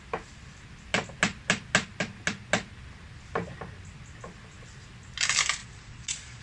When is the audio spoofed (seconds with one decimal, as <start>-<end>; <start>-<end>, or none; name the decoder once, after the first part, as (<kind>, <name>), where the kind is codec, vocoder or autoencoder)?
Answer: 5.6-6.4 (vocoder, Vocos)